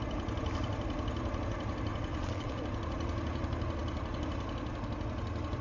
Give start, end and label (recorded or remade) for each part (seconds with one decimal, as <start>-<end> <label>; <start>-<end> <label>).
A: 0.0-2.1 recorded; 2.1-2.6 remade; 2.6-5.6 recorded